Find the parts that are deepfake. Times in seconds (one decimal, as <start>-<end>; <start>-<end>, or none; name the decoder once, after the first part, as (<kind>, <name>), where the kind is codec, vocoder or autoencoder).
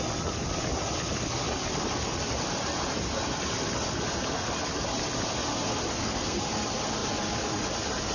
5.9-6.4 (codec, SNAC)